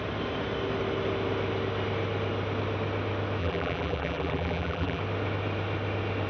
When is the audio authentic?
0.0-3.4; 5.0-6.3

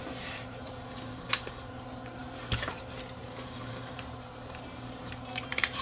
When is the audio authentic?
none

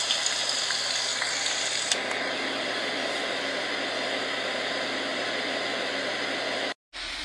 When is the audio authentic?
0.0-7.2

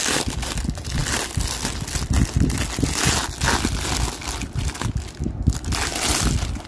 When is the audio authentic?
0.0-6.7

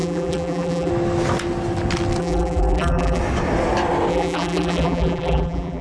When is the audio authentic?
0.9-2.2; 3.2-4.1

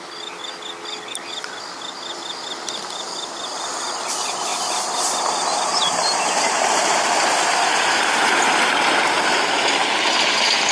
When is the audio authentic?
0.0-4.5; 8.0-10.7